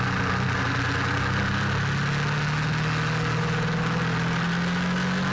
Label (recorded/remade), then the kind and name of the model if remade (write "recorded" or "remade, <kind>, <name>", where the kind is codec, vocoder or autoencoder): recorded